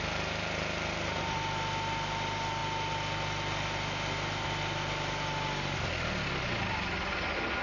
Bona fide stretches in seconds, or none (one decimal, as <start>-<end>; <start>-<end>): 0.0-7.6